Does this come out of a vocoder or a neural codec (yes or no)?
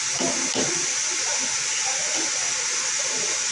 no